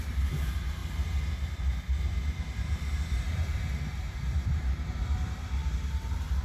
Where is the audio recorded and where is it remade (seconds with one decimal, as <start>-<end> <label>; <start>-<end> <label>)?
0.0-0.8 remade; 0.8-2.1 recorded; 2.1-6.4 remade